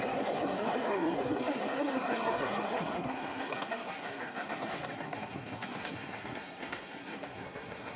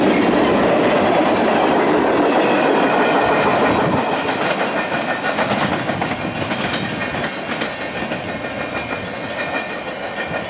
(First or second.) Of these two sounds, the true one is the second